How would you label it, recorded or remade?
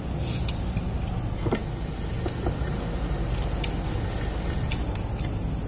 recorded